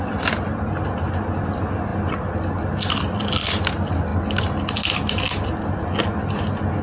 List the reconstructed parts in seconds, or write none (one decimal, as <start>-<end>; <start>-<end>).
none